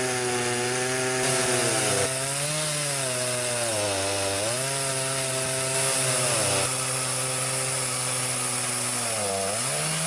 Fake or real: real